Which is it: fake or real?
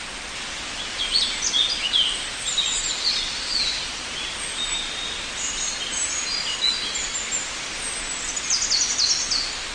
real